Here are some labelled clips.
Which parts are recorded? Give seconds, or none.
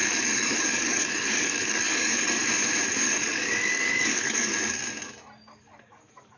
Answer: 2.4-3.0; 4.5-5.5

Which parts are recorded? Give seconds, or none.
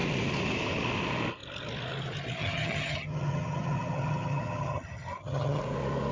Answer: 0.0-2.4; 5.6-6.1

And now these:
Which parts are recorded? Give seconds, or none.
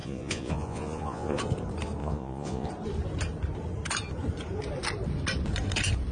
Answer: 1.4-2.0; 2.7-6.1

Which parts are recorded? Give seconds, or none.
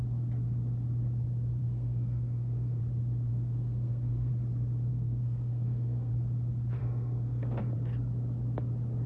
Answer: 0.0-1.6; 2.8-3.3; 4.3-4.9; 6.1-6.8; 7.6-9.1